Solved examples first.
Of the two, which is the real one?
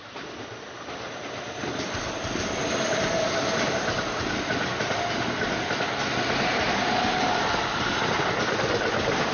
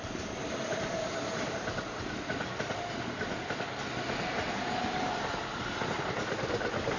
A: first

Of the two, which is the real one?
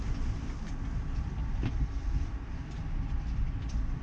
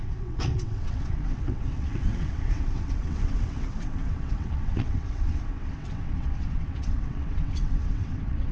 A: first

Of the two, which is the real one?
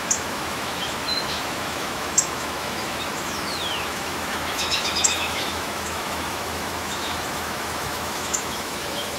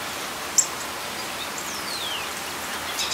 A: second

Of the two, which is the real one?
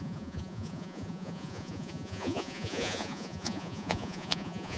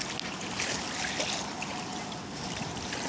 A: second